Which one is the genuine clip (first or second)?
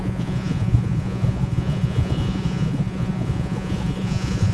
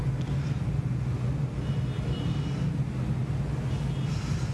second